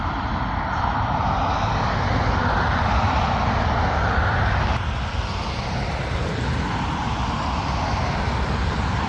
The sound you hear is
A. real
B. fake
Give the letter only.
A